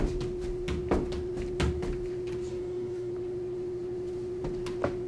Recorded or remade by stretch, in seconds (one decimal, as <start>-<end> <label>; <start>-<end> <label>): 0.0-2.5 recorded; 2.5-3.1 remade; 3.1-5.1 recorded